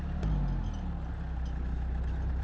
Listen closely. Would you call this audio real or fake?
real